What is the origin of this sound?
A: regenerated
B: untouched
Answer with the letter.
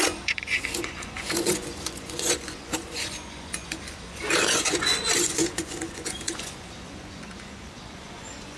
A